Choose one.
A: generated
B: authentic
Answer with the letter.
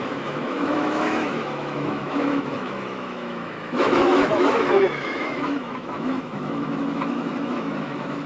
A